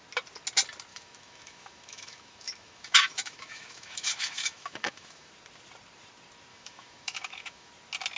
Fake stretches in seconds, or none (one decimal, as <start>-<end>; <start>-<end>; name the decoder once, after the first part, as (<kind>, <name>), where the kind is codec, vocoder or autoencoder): 0.9-5.3 (autoencoder, DAC-VAE); 6.5-7.7